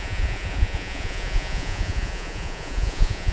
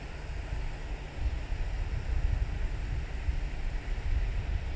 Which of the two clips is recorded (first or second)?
second